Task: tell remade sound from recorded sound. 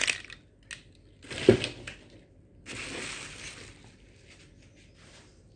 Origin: recorded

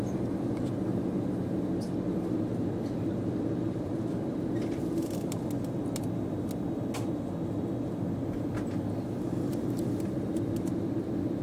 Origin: recorded